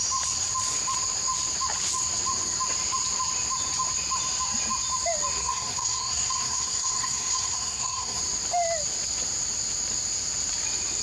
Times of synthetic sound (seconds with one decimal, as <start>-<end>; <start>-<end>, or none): 5.4-8.2